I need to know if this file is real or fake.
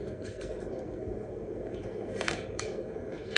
fake